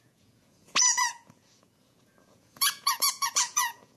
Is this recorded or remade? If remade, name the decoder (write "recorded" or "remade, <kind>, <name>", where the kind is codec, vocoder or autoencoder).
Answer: remade, vocoder, Vocos